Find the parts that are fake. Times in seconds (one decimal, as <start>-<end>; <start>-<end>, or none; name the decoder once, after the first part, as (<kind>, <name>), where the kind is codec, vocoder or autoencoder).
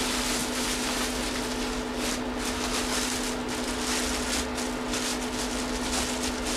0.4-1.3 (vocoder, BigVGAN v2)